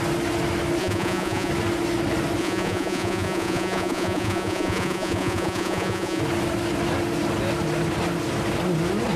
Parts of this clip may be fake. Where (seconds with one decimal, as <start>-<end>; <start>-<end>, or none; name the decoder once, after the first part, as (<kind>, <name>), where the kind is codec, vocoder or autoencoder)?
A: 0.8-1.5 (vocoder, Vocos); 2.4-6.2